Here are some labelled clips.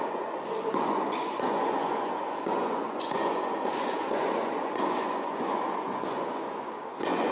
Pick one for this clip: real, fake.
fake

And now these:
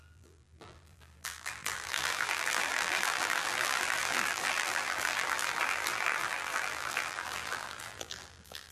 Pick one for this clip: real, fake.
fake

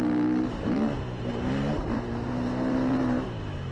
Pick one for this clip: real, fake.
fake